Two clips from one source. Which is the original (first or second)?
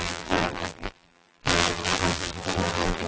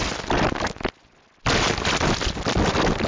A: second